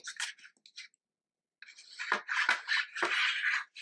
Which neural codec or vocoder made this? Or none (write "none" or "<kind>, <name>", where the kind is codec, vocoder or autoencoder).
none